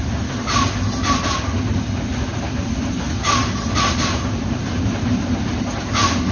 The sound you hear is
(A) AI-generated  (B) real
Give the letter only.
B